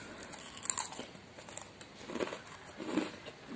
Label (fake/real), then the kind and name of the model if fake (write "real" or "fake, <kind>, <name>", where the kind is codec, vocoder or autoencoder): real